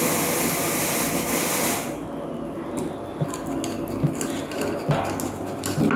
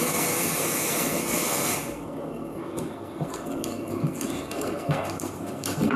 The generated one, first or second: second